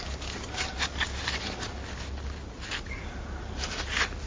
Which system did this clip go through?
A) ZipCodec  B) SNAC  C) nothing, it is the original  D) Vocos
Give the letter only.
C